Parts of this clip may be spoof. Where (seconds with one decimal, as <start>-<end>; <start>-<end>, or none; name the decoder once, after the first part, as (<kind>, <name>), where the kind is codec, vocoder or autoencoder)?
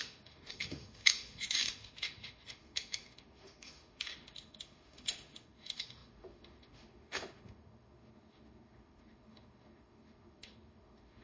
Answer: 0.0-11.2 (autoencoder, DAC-VAE)